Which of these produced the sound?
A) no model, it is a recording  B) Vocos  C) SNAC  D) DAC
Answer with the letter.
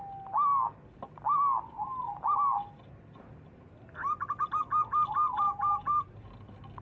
A